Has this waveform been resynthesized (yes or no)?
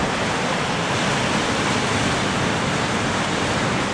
no